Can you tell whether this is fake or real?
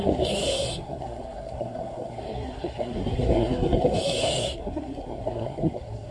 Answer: fake